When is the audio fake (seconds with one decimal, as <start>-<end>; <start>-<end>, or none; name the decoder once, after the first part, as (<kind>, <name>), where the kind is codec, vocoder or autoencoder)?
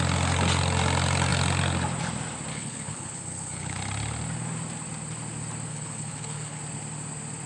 2.5-3.8 (codec, HILCodec); 5.7-6.6